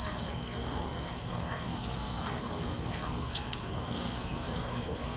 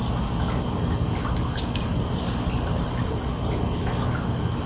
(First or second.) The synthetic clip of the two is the first